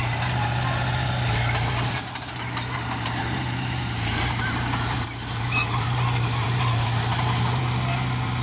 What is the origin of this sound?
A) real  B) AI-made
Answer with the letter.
B